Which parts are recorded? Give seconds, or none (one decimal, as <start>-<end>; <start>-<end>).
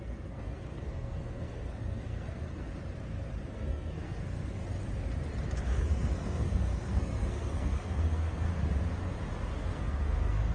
2.7-3.5; 4.6-5.8; 8.5-9.6